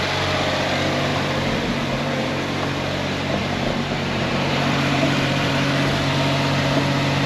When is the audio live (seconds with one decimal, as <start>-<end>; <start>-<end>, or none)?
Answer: 0.0-1.1; 2.3-3.4; 5.5-7.3